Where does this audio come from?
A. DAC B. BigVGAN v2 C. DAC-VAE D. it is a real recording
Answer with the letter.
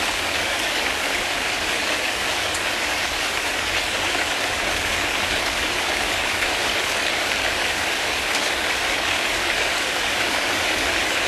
A